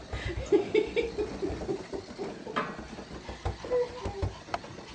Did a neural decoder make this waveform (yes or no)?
no